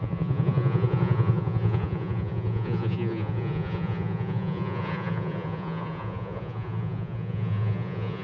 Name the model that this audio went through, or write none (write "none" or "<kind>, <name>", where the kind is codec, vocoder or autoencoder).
vocoder, Vocos